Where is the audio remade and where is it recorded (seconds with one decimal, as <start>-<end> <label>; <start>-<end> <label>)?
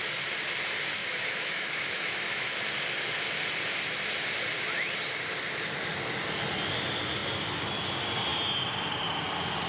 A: 0.0-1.0 recorded; 1.0-2.5 remade; 2.5-9.7 recorded